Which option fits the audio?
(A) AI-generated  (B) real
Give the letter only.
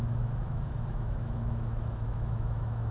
A